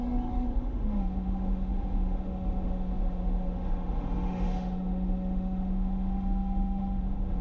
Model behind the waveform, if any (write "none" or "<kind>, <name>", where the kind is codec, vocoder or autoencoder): autoencoder, DAC-VAE